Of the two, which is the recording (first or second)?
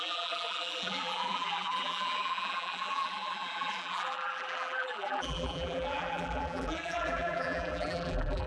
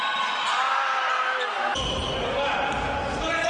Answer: second